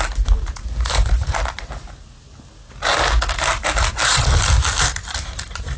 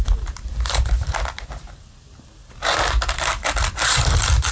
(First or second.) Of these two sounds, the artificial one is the second